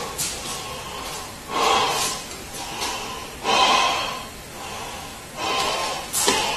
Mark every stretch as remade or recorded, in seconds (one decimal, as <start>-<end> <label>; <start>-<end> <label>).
0.0-4.5 recorded; 4.5-5.2 remade; 5.2-6.6 recorded